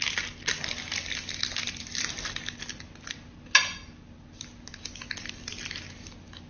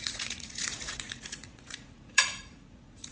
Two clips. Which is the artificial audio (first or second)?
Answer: second